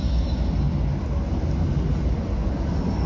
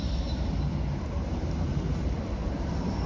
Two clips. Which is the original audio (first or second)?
first